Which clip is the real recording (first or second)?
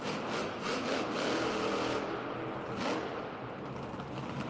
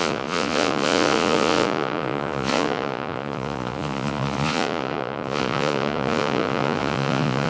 first